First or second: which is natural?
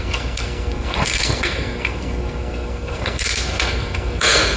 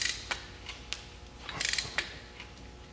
second